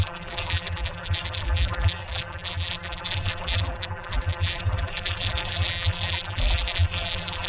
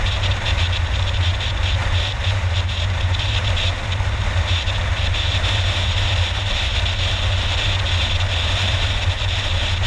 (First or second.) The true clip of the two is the second